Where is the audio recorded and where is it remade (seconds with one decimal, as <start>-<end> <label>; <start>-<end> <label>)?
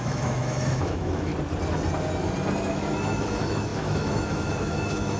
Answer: 0.0-1.3 remade; 1.3-2.7 recorded; 2.7-5.2 remade